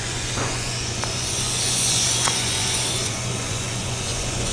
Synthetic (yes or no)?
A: yes